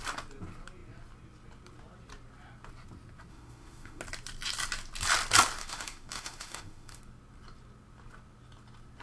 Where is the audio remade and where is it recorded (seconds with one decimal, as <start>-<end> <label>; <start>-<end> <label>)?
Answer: 0.0-3.3 recorded; 3.3-4.0 remade; 4.0-5.6 recorded; 5.6-7.0 remade; 7.0-9.0 recorded